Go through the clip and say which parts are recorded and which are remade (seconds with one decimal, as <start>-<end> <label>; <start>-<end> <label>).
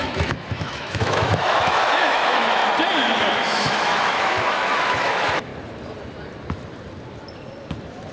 0.0-2.6 remade; 2.6-3.3 recorded; 3.3-5.5 remade; 5.5-8.1 recorded